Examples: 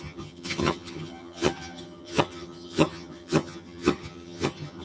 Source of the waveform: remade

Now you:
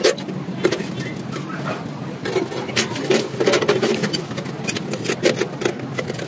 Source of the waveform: recorded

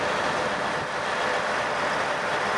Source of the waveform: recorded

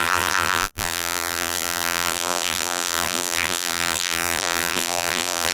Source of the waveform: remade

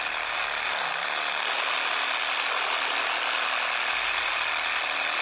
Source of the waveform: recorded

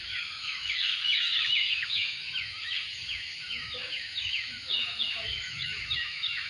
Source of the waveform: remade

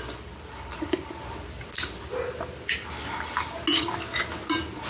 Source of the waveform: recorded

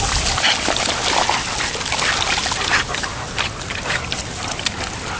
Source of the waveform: recorded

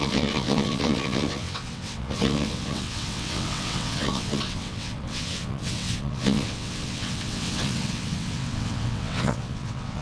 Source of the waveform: remade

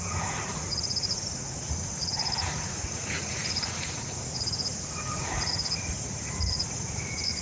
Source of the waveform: remade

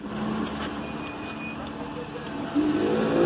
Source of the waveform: remade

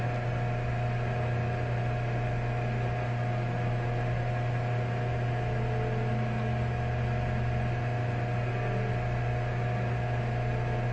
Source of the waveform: recorded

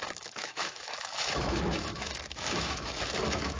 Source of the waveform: remade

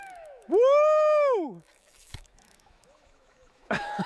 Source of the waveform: remade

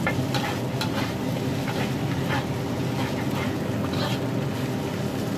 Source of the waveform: recorded